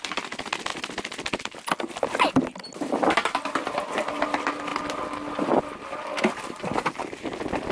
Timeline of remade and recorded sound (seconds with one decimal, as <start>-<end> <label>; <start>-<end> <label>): 0.0-7.7 recorded